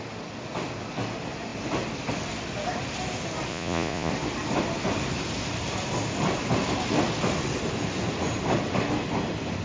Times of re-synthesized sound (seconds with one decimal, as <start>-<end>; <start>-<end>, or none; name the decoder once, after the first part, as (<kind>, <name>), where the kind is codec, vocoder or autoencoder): 3.5-4.1 (vocoder, Vocos)